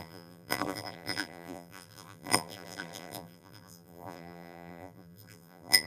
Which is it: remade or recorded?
remade